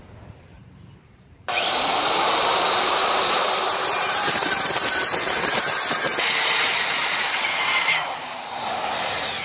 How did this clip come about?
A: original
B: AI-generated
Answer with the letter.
B